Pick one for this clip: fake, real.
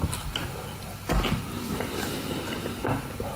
real